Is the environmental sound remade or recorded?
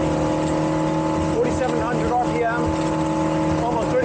recorded